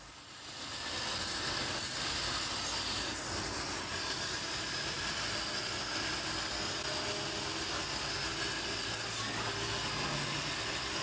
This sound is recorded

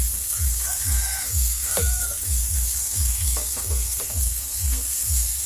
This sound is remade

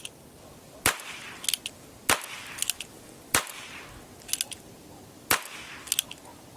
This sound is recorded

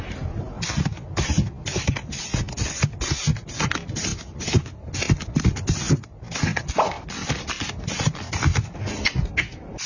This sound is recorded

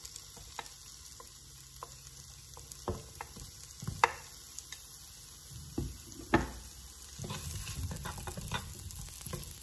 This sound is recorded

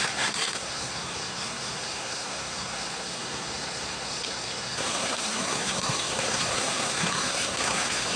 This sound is remade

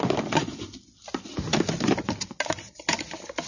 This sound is recorded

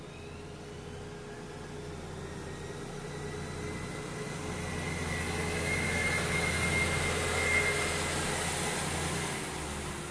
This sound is recorded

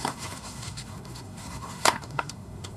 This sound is remade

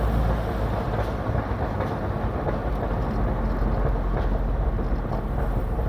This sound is recorded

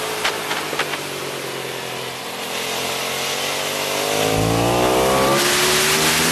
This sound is recorded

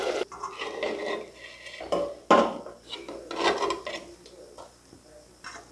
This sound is recorded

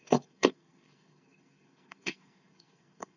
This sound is remade